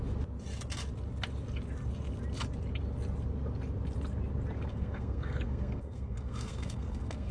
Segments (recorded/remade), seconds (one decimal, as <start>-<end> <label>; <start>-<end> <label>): 0.0-4.7 recorded; 4.7-7.3 remade